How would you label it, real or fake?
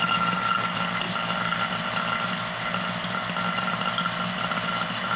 real